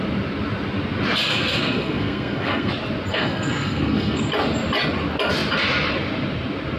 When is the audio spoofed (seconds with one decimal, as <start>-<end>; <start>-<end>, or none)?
1.3-2.7; 3.1-4.3